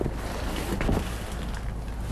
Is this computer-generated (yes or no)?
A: no